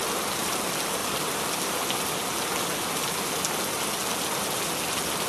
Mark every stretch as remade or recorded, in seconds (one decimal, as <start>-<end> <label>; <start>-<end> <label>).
0.0-1.0 recorded; 1.0-1.7 remade; 1.7-5.3 recorded